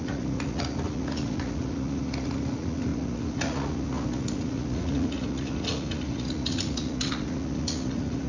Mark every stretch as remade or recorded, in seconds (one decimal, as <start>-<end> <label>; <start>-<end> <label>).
0.0-8.3 remade